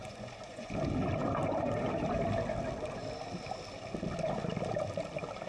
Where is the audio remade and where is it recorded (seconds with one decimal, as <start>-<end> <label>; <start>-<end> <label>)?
0.0-0.7 remade; 0.7-5.5 recorded